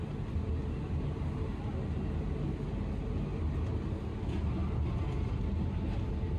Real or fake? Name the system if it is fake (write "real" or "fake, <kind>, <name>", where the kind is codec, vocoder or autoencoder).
real